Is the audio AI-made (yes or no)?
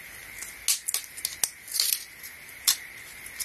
no